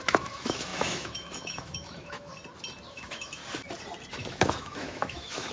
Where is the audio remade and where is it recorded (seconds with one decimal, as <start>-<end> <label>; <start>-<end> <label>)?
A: 0.0-2.3 remade; 2.3-2.9 recorded; 2.9-3.4 remade; 3.4-4.1 recorded; 4.1-5.5 remade